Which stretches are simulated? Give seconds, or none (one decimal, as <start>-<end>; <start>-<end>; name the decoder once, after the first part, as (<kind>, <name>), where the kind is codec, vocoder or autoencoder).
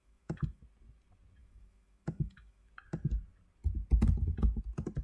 0.0-0.6 (autoencoder, DAC-VAE); 1.4-2.7